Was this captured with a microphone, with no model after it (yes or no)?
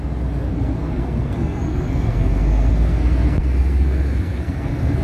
no